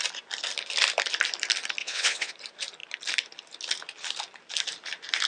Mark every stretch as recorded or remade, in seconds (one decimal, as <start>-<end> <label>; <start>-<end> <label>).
0.0-1.8 recorded; 1.8-2.3 remade; 2.3-5.3 recorded

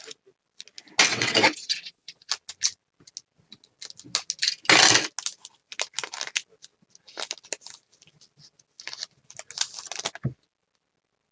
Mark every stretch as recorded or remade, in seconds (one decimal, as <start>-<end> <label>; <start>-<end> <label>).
0.0-1.1 recorded; 1.1-2.3 remade; 2.3-11.3 recorded

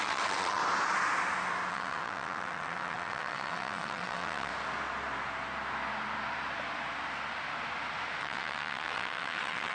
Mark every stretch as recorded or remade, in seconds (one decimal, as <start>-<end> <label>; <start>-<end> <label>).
0.0-0.6 remade; 0.6-1.7 recorded; 1.7-4.5 remade; 4.5-8.2 recorded; 8.2-9.7 remade

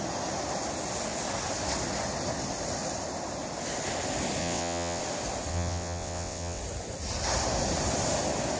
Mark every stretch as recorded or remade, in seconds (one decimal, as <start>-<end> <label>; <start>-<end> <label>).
0.0-4.4 recorded; 4.4-5.0 remade; 5.0-5.5 recorded; 5.5-6.6 remade; 6.6-8.6 recorded

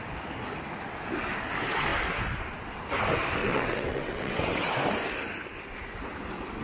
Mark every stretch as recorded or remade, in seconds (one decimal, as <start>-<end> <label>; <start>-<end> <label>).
0.0-3.4 recorded; 3.4-4.7 remade; 4.7-6.6 recorded

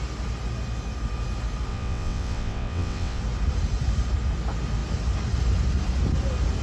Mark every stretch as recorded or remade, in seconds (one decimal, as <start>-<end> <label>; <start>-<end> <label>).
0.0-1.7 recorded; 1.7-3.2 remade; 3.2-6.6 recorded